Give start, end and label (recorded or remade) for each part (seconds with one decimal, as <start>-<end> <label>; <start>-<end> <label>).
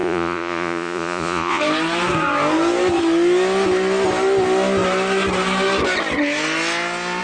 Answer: 0.0-1.6 remade; 1.6-7.2 recorded